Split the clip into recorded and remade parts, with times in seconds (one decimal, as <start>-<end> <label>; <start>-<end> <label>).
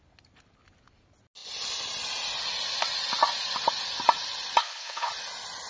0.0-4.6 recorded; 4.6-5.1 remade; 5.1-5.7 recorded